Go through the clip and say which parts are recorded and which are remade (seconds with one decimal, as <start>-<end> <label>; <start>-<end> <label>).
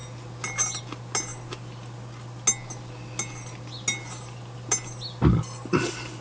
0.0-6.2 recorded